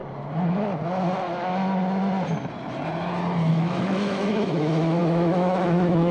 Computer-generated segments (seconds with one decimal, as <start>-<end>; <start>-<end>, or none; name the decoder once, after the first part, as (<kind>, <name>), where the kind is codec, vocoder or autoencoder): 3.5-6.1 (autoencoder, DAC-VAE)